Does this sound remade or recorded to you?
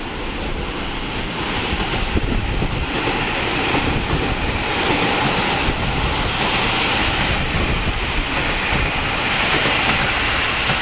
recorded